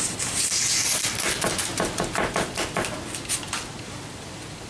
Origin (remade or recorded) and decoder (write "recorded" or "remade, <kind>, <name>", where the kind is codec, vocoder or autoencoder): recorded